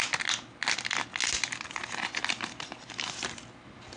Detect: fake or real real